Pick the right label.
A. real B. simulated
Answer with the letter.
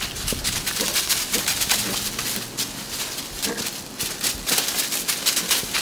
A